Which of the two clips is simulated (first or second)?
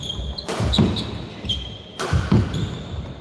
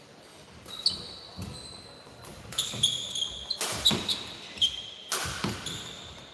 first